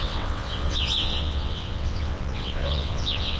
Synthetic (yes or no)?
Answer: yes